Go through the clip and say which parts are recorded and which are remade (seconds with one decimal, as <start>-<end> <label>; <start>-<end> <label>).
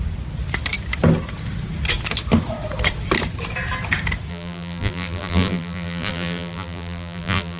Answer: 0.0-4.3 recorded; 4.3-7.6 remade